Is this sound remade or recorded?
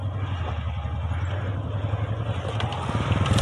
recorded